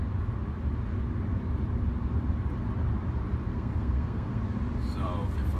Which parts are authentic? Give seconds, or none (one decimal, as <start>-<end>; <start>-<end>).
0.0-3.5; 4.4-5.6